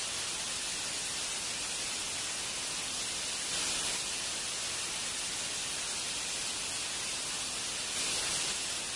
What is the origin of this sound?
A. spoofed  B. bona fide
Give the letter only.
B